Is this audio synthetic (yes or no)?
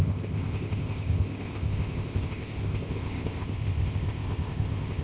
yes